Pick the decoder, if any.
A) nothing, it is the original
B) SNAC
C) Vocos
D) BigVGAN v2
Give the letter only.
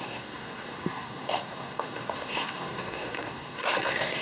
B